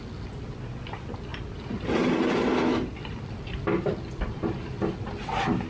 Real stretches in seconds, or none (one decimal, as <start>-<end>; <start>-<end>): 0.0-5.7